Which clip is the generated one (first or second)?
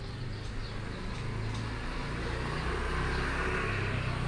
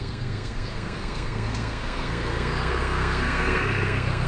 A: second